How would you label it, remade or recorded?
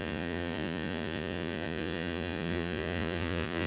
remade